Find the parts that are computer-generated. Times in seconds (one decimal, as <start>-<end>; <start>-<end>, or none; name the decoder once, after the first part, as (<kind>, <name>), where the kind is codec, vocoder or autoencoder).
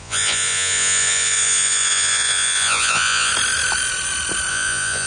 0.0-3.3 (vocoder, Vocos); 4.5-5.1